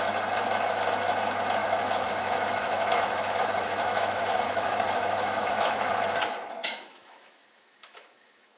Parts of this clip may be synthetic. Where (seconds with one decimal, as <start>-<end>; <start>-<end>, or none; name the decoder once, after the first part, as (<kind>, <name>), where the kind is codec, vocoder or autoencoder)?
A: 1.6-5.9 (autoencoder, DAC-VAE); 6.6-8.6